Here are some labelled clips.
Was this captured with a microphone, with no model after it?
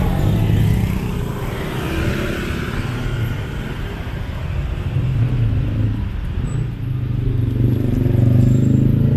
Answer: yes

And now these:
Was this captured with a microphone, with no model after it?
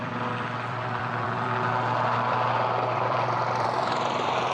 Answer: no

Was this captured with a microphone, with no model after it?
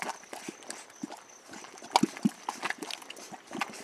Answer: yes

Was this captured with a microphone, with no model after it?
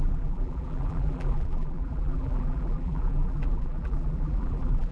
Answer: no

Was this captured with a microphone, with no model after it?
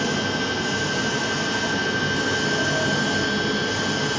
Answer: yes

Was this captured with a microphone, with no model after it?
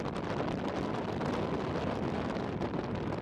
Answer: yes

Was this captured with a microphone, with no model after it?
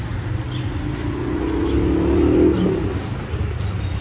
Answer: yes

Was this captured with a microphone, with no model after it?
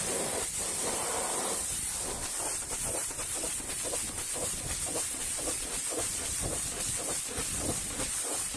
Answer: no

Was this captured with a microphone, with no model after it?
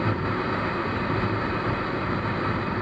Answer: no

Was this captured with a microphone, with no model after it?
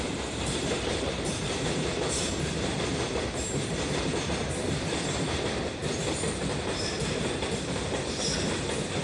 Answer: no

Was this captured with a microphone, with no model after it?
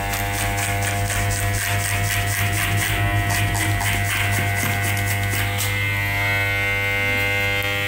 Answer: yes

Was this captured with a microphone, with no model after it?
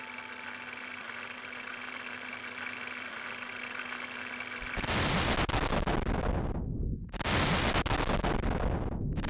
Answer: yes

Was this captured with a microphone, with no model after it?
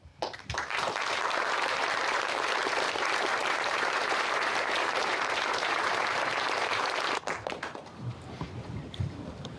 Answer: no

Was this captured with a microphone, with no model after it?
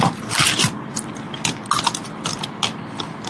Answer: yes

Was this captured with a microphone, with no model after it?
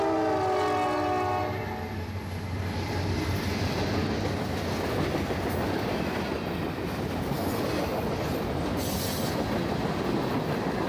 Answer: yes